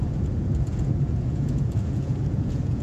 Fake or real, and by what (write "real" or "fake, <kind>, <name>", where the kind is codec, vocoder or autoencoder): fake, vocoder, Vocos